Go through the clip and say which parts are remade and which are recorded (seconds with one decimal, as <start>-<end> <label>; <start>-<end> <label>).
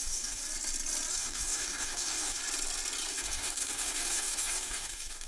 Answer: 0.0-0.4 remade; 0.4-1.1 recorded; 1.1-2.4 remade; 2.4-3.1 recorded; 3.1-5.3 remade